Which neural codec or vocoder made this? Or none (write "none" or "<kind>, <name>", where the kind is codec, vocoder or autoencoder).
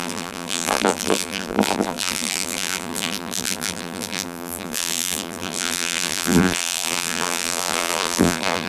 vocoder, BigVGAN v2